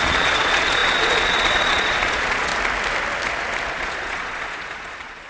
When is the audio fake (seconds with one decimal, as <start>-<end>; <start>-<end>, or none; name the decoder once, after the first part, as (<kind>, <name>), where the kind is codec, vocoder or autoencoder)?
0.0-2.5 (vocoder, Vocos); 3.7-5.3